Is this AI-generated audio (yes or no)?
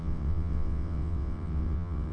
yes